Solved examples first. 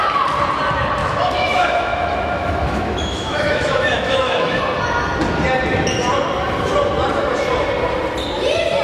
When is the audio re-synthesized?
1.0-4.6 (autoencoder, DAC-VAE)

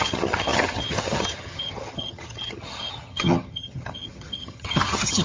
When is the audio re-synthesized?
0.0-5.2 (vocoder, HiFi-GAN)